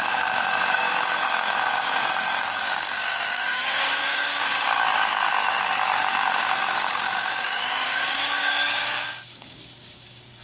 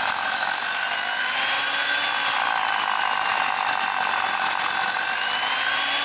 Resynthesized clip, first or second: first